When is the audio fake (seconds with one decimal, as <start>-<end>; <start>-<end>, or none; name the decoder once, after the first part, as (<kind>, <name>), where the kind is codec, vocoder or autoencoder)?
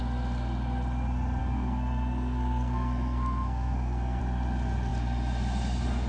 1.4-4.2 (codec, SNAC)